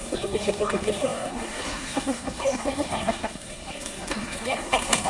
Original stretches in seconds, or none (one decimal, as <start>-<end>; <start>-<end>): none